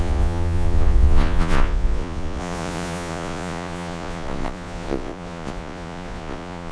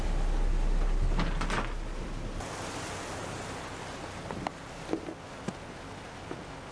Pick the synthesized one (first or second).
first